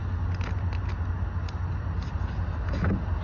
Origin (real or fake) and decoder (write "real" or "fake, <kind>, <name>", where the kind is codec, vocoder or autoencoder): real